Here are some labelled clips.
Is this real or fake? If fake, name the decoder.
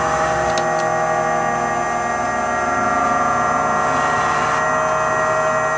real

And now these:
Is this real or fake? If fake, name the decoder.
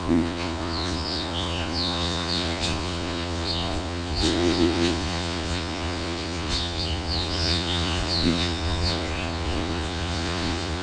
fake, vocoder, Vocos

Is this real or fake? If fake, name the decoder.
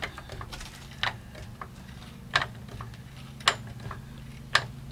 real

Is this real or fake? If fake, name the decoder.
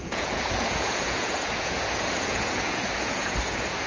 fake, vocoder, Vocos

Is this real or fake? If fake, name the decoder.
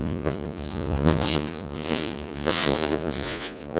fake, vocoder, Vocos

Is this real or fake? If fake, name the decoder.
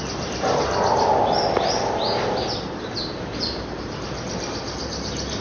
real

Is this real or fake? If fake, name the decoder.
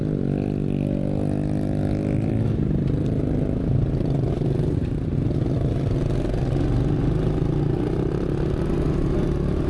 real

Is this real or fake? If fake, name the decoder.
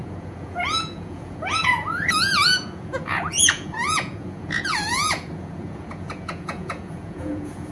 fake, vocoder, Vocos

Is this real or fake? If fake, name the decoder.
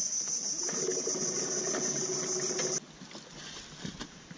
real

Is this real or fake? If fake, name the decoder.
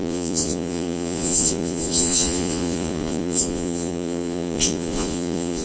fake, vocoder, Vocos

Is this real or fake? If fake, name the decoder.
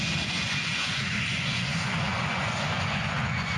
fake, vocoder, Vocos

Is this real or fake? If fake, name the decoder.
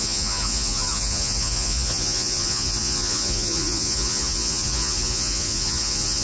fake, vocoder, Vocos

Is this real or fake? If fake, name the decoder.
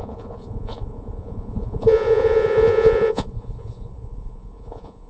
fake, vocoder, Vocos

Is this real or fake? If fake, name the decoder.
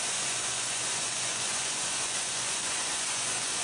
fake, vocoder, Vocos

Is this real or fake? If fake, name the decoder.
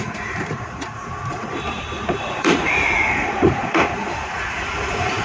fake, vocoder, Vocos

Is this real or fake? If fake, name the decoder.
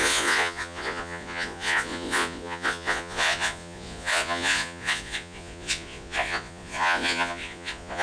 fake, vocoder, Vocos